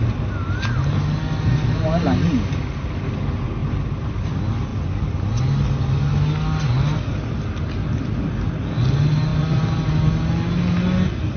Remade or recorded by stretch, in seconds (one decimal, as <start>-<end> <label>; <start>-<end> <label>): 0.0-3.6 recorded; 3.6-4.2 remade; 4.2-4.7 recorded; 4.7-5.4 remade; 5.4-9.3 recorded; 9.3-9.9 remade; 9.9-11.4 recorded